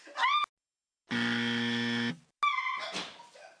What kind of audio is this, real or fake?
real